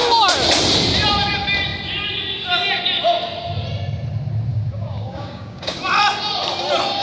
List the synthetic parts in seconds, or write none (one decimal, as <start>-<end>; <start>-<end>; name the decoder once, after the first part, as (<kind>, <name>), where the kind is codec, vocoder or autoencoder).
4.5-5.8 (codec, DAC)